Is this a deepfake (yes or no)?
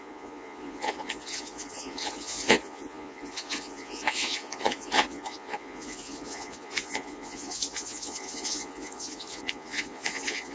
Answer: yes